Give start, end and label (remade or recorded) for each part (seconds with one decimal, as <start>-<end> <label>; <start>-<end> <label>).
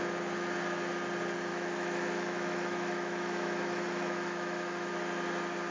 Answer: 0.0-1.5 recorded; 1.5-4.9 remade; 4.9-5.7 recorded